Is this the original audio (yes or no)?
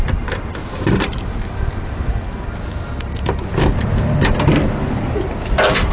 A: yes